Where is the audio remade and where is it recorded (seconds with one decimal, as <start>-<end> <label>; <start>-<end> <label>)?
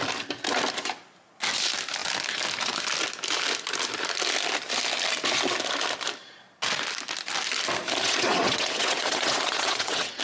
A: 0.0-8.0 recorded; 8.0-10.2 remade